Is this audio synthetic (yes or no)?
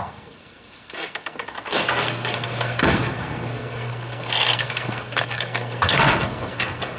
yes